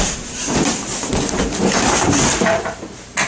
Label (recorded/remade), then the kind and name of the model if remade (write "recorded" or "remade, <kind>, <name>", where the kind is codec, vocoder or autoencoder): recorded